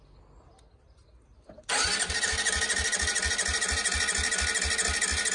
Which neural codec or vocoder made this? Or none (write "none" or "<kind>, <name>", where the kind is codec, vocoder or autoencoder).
none